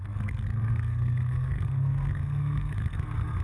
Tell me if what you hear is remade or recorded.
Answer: remade